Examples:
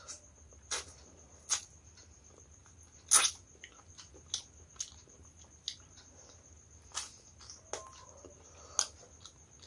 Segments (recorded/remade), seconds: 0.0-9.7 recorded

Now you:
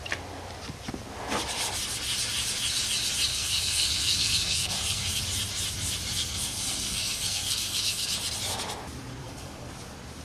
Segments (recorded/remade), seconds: 0.0-3.3 recorded; 3.3-5.2 remade; 5.2-6.1 recorded; 6.1-8.1 remade; 8.1-9.2 recorded; 9.2-9.7 remade; 9.7-10.2 recorded

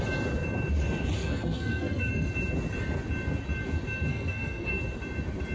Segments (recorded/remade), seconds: 0.0-1.2 recorded; 1.2-2.3 remade; 2.3-4.1 recorded; 4.1-4.7 remade; 4.7-5.5 recorded